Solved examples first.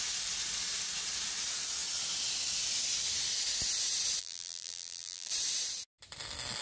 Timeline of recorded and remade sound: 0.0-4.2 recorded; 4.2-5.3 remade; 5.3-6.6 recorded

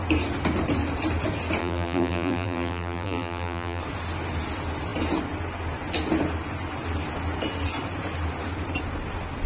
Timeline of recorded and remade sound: 0.0-1.6 recorded; 1.6-3.8 remade; 3.8-9.5 recorded

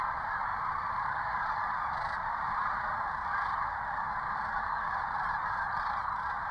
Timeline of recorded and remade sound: 0.0-0.5 recorded; 0.5-1.2 remade; 1.2-2.0 recorded; 2.0-3.2 remade; 3.2-6.5 recorded

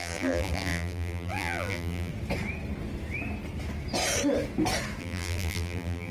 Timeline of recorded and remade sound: 0.0-2.1 remade; 2.1-5.0 recorded; 5.0-6.1 remade

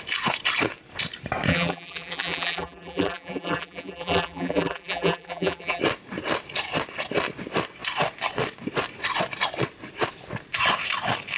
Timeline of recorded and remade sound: 0.0-1.5 recorded; 1.5-5.8 remade; 5.8-11.4 recorded

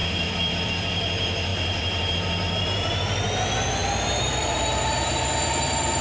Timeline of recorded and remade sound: 0.0-0.7 remade; 0.7-1.5 recorded; 1.5-2.1 remade; 2.1-3.8 recorded; 3.8-4.6 remade; 4.6-6.0 recorded

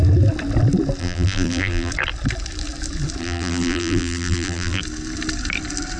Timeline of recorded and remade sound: 0.0-1.0 recorded; 1.0-1.9 remade; 1.9-3.2 recorded; 3.2-4.8 remade; 4.8-6.0 recorded